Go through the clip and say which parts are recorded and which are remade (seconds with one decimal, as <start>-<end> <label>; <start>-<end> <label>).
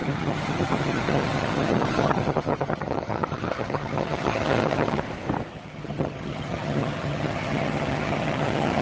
0.0-5.0 remade; 5.0-5.5 recorded; 5.5-8.8 remade